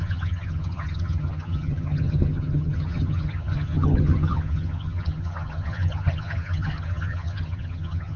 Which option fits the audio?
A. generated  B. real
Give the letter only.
A